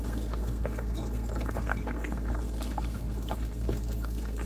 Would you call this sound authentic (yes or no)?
no